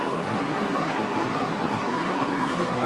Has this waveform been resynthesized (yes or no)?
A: yes